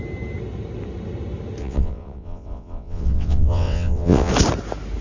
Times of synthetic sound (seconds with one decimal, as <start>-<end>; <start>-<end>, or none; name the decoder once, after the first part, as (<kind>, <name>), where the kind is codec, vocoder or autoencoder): 1.6-4.3 (vocoder, WaveNeXt)